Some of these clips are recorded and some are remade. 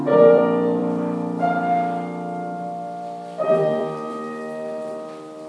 remade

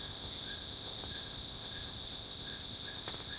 remade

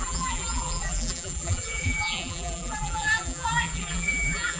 remade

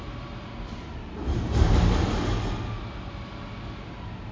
recorded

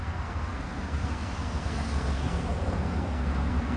remade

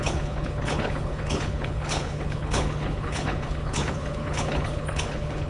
remade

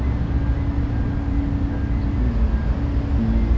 recorded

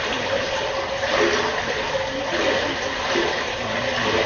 recorded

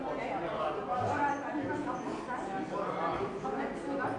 recorded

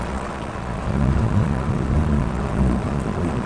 remade